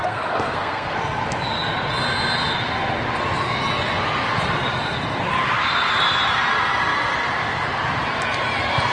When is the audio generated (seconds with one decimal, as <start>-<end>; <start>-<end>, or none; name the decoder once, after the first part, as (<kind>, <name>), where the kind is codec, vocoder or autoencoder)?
0.0-1.0 (codec, SNAC)